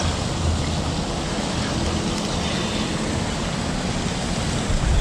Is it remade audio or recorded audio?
recorded